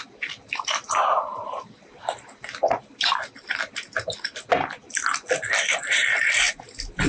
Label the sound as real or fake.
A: real